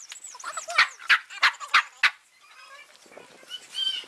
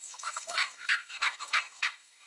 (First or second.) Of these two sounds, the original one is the first